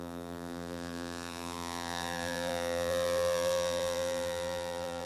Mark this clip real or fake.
fake